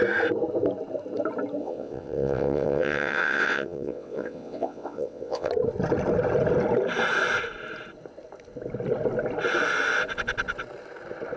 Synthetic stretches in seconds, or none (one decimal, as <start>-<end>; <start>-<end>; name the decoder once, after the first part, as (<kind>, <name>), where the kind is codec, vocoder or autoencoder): 1.6-5.5 (vocoder, WaveNeXt)